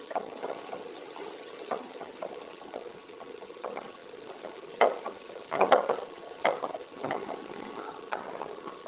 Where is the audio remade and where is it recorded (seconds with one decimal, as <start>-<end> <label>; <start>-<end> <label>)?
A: 0.0-8.9 remade